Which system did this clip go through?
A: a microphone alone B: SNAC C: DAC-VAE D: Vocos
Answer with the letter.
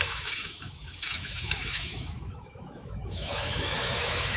C